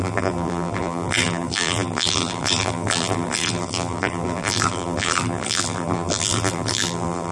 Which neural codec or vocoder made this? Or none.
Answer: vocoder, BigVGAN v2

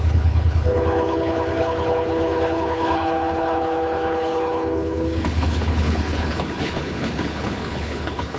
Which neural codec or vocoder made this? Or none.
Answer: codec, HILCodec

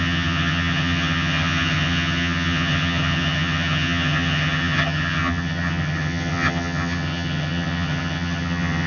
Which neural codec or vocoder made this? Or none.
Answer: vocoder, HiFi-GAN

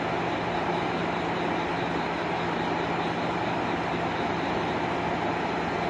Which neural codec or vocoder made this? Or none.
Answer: none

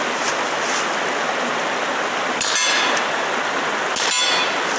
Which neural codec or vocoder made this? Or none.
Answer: none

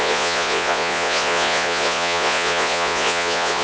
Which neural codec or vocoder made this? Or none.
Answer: vocoder, Vocos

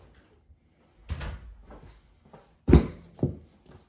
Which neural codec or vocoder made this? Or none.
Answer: none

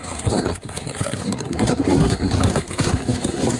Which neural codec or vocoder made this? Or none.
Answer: codec, SNAC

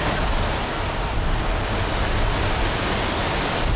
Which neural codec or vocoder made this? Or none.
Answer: none